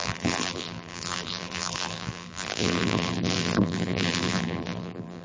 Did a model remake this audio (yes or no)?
yes